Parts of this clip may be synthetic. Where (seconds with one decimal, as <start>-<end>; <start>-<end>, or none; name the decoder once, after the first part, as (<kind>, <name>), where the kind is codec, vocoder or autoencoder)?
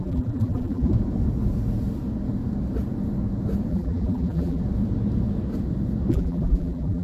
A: 0.0-0.9 (vocoder, BigVGAN v2); 3.7-4.6; 6.1-7.0